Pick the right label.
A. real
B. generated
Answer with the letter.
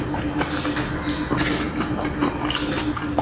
A